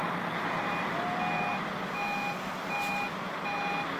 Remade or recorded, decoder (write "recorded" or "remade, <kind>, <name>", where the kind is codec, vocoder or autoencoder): recorded